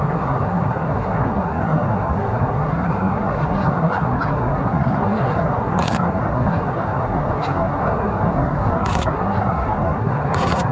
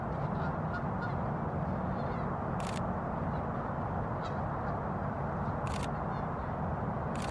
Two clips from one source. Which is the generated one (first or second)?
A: first